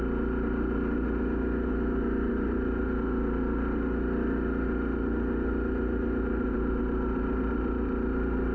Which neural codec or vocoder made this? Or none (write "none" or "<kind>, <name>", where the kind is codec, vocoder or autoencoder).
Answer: none